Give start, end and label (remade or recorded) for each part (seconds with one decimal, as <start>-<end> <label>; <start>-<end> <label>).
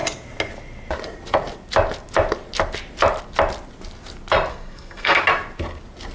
0.0-4.5 recorded; 4.5-5.2 remade; 5.2-6.1 recorded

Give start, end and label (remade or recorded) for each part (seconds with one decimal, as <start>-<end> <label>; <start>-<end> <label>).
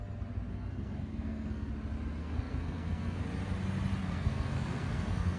0.0-0.5 recorded; 0.5-1.7 remade; 1.7-2.2 recorded; 2.2-3.2 remade; 3.2-4.0 recorded; 4.0-5.4 remade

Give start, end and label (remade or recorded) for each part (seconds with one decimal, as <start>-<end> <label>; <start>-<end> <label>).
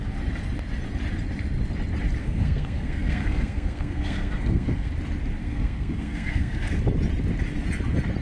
0.0-2.2 recorded; 2.2-4.9 remade; 4.9-5.4 recorded; 5.4-6.8 remade; 6.8-8.2 recorded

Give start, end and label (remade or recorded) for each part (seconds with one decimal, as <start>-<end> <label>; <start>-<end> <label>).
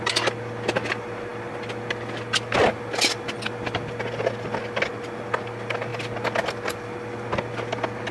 0.0-8.1 recorded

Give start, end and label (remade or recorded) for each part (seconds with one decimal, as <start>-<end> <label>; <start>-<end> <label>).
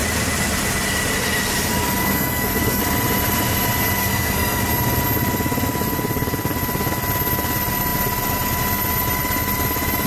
0.0-2.0 recorded; 2.0-2.8 remade; 2.8-4.0 recorded; 4.0-4.6 remade; 4.6-10.1 recorded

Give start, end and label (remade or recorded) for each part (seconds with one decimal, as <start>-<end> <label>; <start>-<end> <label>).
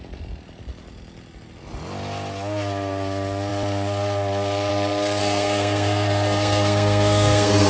0.0-5.2 recorded; 5.2-7.7 remade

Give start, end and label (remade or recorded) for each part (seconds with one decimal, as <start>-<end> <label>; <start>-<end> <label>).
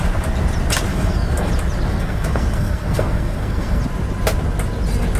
0.0-0.9 recorded; 0.9-1.5 remade; 1.5-1.9 recorded; 1.9-3.8 remade; 3.8-5.2 recorded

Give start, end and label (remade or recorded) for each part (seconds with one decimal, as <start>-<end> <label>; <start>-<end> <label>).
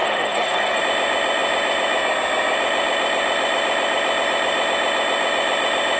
0.0-0.8 remade; 0.8-6.0 recorded